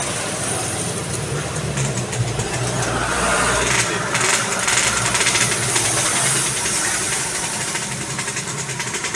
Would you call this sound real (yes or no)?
no